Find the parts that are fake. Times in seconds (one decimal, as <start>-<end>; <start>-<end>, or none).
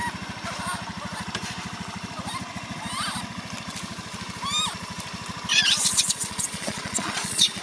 5.5-7.6